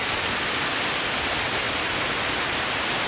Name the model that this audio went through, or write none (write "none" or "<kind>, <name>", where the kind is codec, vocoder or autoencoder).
none